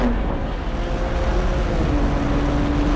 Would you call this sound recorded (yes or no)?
yes